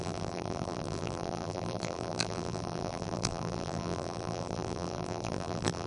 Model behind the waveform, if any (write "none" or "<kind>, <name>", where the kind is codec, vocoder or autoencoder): vocoder, BigVGAN v2